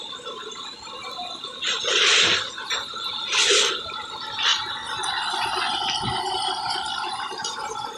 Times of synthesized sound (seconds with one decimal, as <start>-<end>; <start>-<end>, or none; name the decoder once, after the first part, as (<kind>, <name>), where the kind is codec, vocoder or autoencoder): none